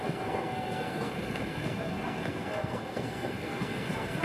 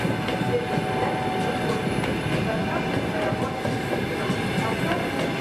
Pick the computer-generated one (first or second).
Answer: first